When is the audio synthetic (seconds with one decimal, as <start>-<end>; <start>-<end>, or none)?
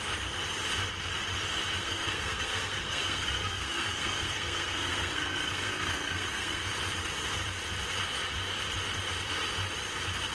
1.8-6.7